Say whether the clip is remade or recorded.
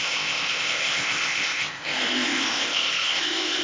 remade